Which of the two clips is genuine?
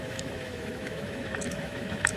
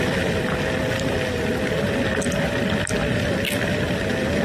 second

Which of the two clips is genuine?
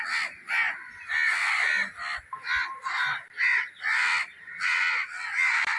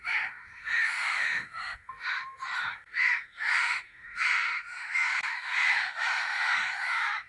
first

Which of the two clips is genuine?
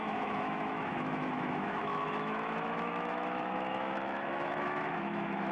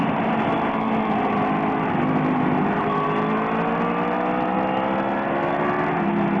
second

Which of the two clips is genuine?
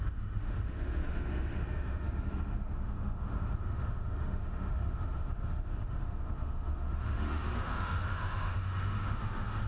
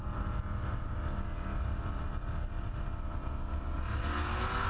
second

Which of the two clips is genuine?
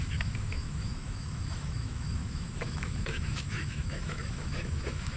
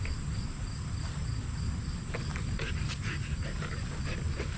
second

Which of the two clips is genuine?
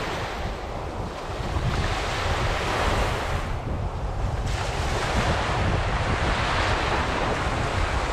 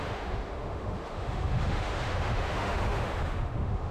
first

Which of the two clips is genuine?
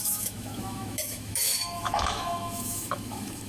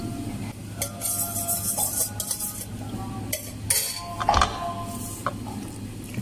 second